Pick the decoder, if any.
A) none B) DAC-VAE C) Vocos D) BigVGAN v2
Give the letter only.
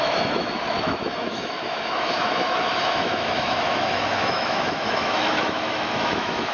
B